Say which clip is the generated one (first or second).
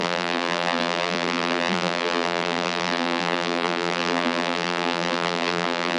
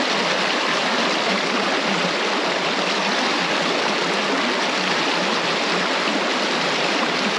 first